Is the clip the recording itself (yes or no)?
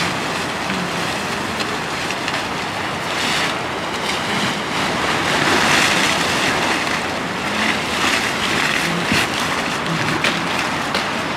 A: yes